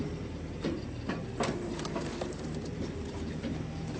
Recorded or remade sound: remade